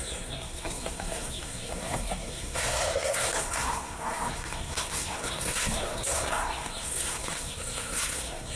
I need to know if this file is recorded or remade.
remade